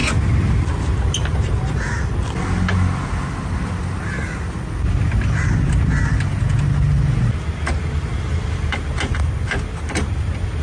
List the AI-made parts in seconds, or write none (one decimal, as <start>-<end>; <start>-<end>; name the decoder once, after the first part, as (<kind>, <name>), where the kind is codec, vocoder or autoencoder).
none